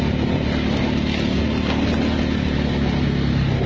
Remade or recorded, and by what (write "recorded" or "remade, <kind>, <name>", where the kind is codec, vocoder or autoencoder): recorded